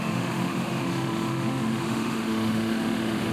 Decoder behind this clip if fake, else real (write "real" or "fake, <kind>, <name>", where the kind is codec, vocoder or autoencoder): fake, autoencoder, DAC-VAE